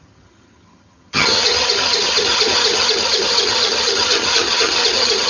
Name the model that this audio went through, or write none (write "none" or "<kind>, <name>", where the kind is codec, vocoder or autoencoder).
vocoder, HiFi-GAN